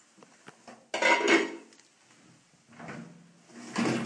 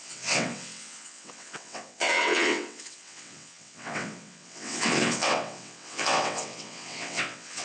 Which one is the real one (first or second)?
first